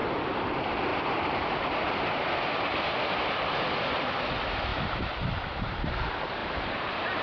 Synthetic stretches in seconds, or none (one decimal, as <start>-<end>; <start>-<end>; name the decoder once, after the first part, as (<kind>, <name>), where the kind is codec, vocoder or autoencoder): 0.0-0.5 (vocoder, BigVGAN v2); 0.9-3.2; 4.7-5.9; 6.4-7.2